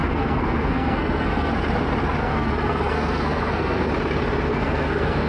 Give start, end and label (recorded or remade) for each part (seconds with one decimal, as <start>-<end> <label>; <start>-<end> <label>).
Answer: 0.0-1.5 remade; 1.5-2.2 recorded; 2.2-3.9 remade; 3.9-4.5 recorded; 4.5-5.3 remade